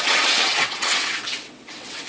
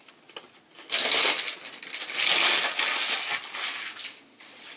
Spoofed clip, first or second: first